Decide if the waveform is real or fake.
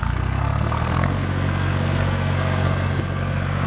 fake